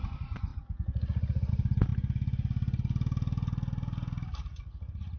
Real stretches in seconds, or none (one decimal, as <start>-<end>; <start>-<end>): 0.0-5.2